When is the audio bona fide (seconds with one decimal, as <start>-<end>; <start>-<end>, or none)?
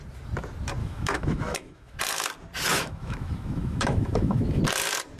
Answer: 0.0-0.8; 2.0-2.7; 4.6-5.2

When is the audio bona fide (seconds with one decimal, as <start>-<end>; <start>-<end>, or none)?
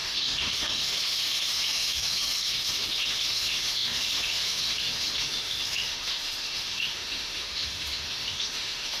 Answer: none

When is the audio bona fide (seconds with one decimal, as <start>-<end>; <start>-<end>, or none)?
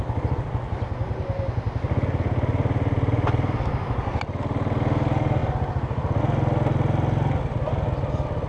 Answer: 0.0-8.5